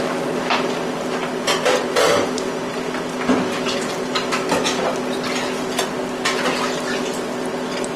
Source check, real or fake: real